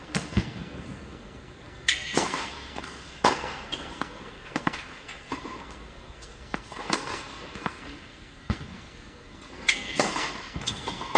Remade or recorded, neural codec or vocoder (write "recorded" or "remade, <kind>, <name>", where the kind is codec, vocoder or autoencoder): remade, codec, SNAC